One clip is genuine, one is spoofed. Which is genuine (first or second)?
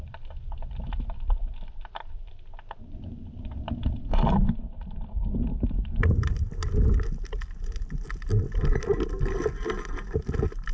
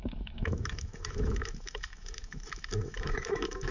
first